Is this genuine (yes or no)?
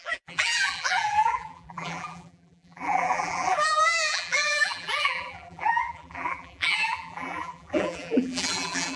no